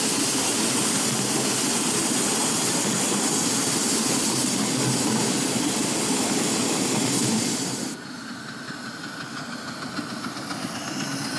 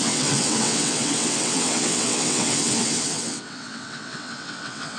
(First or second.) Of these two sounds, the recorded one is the first